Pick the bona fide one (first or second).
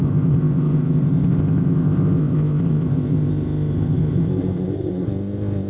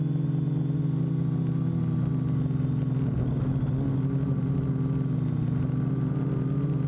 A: second